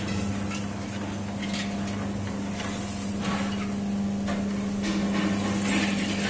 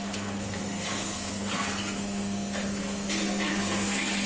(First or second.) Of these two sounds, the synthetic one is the second